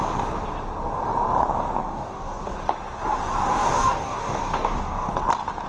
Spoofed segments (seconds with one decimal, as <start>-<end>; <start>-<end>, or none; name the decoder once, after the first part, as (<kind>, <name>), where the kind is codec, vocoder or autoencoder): 1.8-2.4 (codec, DAC); 3.5-5.1